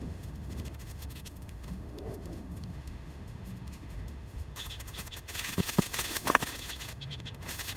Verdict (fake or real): fake